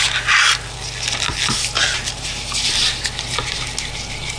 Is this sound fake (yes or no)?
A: no